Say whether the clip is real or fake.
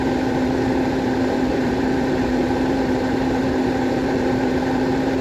fake